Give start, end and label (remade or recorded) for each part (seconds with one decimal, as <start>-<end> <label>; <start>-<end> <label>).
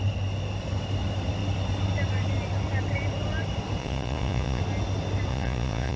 0.0-3.8 recorded; 3.8-4.6 remade; 4.6-5.3 recorded; 5.3-6.0 remade